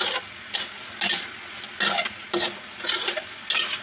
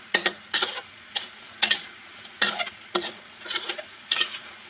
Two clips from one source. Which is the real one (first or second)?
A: first